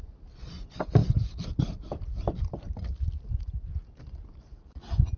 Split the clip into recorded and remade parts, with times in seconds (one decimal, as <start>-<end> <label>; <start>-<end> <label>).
0.0-1.0 recorded; 1.0-3.7 remade; 3.7-5.2 recorded

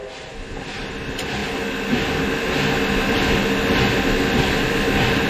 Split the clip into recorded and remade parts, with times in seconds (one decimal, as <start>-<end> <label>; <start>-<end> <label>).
0.0-5.3 recorded